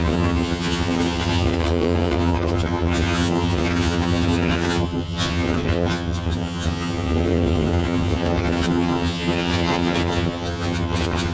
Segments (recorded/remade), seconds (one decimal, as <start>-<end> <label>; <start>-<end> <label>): 0.0-11.3 remade